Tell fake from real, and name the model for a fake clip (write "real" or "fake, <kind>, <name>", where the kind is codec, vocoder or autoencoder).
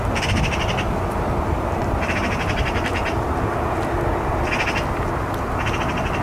real